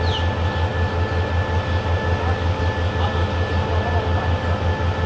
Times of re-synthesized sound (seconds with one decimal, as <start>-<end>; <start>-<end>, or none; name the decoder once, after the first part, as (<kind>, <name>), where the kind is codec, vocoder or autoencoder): none